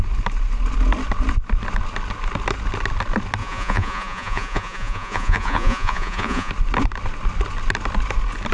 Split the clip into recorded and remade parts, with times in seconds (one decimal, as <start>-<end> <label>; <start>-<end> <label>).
0.0-3.4 recorded; 3.4-6.5 remade; 6.5-8.5 recorded